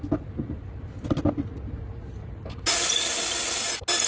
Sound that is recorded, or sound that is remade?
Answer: recorded